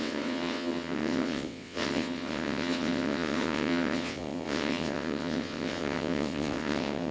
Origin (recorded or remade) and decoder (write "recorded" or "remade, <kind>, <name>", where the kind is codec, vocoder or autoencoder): remade, vocoder, WaveNeXt